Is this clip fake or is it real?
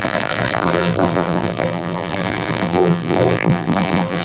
fake